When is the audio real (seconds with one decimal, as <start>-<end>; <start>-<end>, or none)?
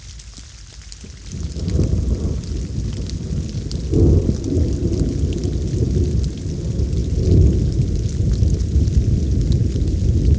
0.0-10.4